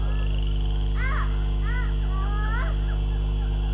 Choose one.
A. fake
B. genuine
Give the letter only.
B